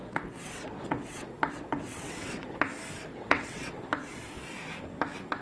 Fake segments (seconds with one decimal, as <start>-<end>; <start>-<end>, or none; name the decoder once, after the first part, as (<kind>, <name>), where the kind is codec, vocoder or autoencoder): 0.0-2.6 (vocoder, WaveNeXt); 3.1-3.7